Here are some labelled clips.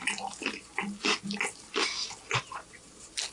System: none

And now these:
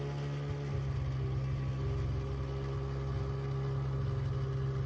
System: none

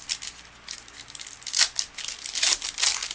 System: none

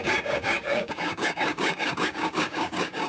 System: codec, DAC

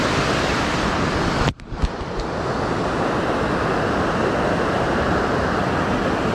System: none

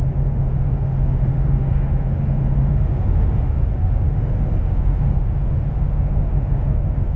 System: autoencoder, DAC-VAE